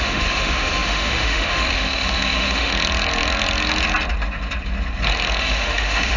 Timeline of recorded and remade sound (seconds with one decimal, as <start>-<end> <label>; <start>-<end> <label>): 0.0-2.7 remade; 2.7-5.4 recorded; 5.4-6.2 remade